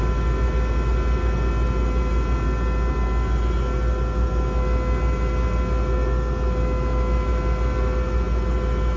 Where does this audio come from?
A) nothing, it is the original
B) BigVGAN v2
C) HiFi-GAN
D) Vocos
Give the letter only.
A